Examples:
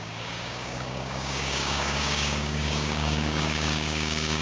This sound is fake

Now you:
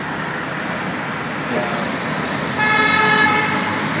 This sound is real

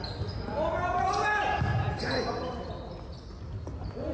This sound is real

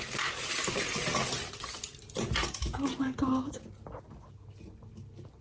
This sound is real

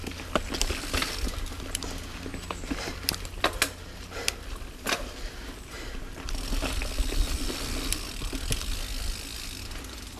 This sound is real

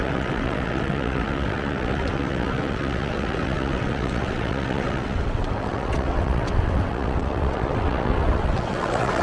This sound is fake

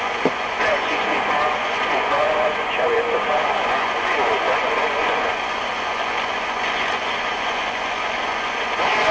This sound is fake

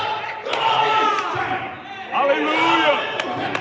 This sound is fake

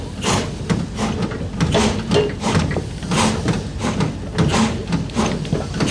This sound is real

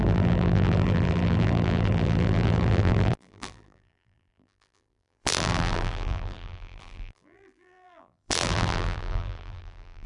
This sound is fake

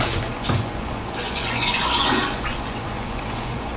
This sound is fake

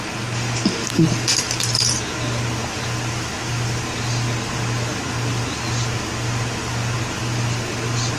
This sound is fake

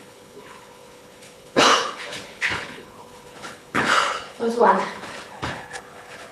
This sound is fake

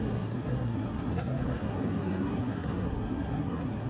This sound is fake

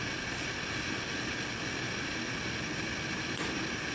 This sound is real